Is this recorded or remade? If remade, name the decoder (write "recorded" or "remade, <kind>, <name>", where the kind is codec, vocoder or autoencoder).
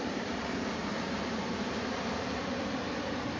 remade, vocoder, BigVGAN v2